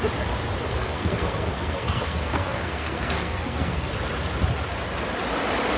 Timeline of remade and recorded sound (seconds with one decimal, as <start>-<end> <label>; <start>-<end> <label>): 0.0-0.7 recorded; 0.7-3.9 remade; 3.9-5.8 recorded